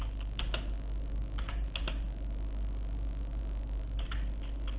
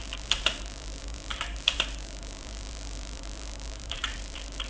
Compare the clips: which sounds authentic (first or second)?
first